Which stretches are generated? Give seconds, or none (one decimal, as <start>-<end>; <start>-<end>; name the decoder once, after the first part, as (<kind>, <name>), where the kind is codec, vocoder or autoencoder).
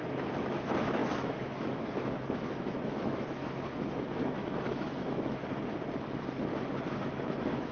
0.0-5.4 (autoencoder, DAC-VAE); 6.9-7.7